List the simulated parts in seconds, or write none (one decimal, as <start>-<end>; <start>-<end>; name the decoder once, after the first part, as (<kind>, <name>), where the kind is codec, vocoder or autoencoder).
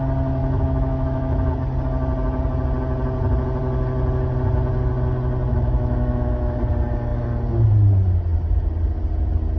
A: 0.4-1.5 (autoencoder, DAC-VAE); 5.5-6.6